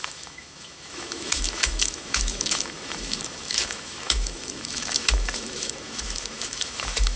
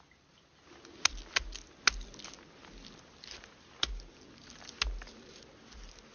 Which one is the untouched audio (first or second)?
second